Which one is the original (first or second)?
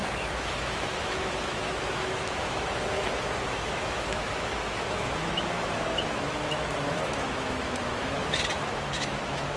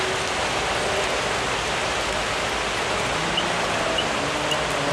second